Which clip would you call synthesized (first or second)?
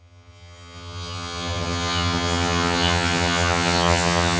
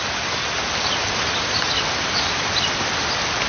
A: first